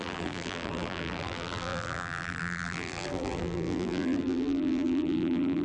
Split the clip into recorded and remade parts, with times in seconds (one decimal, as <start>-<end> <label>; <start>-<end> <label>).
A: 0.0-5.6 remade